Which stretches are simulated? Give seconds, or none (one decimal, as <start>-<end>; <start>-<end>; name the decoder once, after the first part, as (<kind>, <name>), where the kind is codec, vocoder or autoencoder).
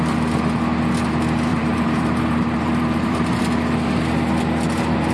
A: 1.5-3.4 (vocoder, BigVGAN v2)